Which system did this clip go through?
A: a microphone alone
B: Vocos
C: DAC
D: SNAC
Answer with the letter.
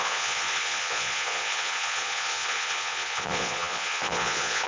B